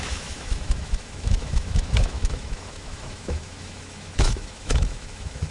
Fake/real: fake